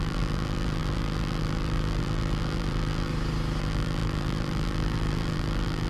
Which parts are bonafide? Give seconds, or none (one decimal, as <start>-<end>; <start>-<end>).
3.1-3.6